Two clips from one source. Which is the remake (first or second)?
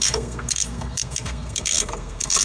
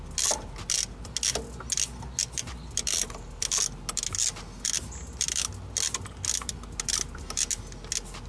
first